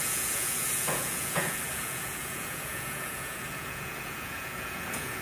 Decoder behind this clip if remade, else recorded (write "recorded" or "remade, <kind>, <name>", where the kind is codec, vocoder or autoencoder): remade, vocoder, Vocos